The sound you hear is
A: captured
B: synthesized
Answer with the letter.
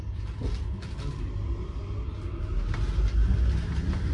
A